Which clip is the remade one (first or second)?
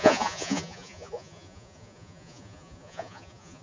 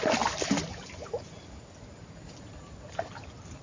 first